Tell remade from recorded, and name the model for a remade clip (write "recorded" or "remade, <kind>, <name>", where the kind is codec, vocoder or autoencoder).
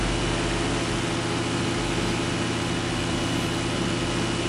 recorded